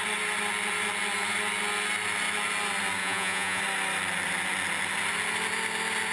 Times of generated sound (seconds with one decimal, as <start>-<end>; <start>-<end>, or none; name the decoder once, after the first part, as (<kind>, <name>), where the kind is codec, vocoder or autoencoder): 3.0-3.6 (vocoder, Vocos)